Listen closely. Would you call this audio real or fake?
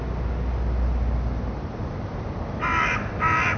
real